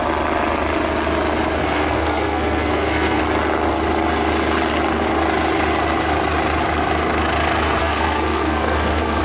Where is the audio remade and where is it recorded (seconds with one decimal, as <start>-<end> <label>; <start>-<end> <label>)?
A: 0.0-1.6 recorded; 1.6-3.2 remade; 3.2-7.8 recorded; 7.8-9.2 remade

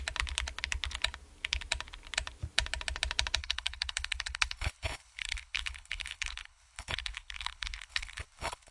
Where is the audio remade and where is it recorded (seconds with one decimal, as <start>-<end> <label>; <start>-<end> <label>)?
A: 0.0-3.4 recorded; 3.4-8.7 remade

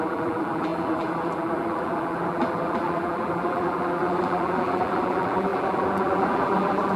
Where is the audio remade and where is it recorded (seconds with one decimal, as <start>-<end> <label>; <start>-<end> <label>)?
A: 0.0-7.0 remade

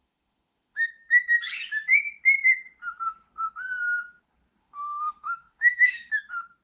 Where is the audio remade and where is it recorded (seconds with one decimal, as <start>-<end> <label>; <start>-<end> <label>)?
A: 0.0-0.9 remade; 0.9-4.6 recorded; 4.6-6.1 remade; 6.1-6.6 recorded